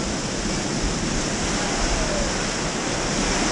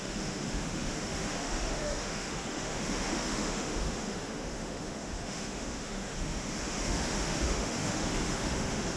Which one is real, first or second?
first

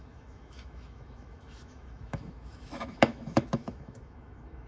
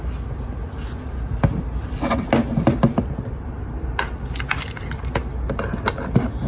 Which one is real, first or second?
second